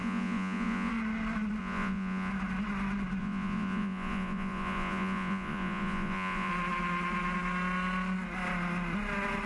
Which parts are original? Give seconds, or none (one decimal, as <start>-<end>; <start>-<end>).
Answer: 0.9-1.6; 2.3-3.2; 6.5-9.5

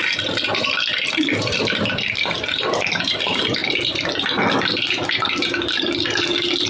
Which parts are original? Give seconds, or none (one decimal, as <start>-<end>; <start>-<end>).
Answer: 3.6-6.7

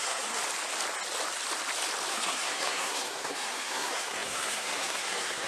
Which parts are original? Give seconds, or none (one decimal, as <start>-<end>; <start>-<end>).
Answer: 0.4-2.1

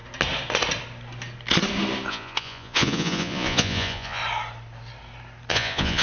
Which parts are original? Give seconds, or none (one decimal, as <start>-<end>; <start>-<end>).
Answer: 0.0-2.1; 4.2-5.5